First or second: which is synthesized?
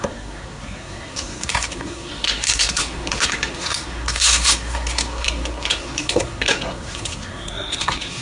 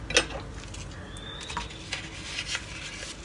first